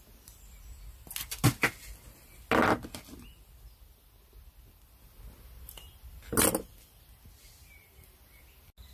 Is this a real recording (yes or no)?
yes